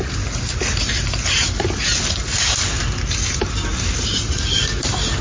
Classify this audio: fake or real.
real